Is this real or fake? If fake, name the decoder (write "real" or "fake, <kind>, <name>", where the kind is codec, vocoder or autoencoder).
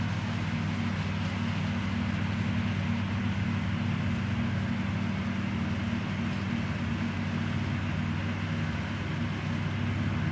real